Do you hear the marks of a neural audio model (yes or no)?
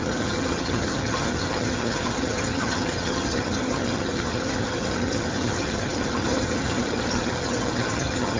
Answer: yes